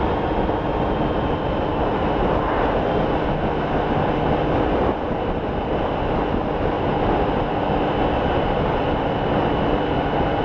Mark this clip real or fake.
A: real